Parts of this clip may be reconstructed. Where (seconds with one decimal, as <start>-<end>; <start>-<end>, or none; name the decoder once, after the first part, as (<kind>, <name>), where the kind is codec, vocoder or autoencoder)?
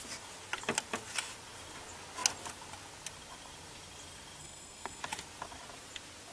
4.4-5.0 (codec, SNAC)